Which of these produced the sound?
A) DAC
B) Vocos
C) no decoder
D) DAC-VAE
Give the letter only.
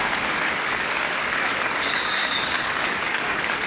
A